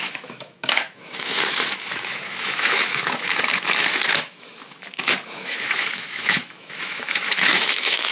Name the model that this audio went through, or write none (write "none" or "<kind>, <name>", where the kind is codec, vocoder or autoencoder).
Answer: autoencoder, DAC-VAE